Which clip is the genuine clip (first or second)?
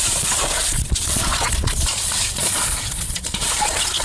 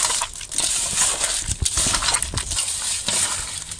second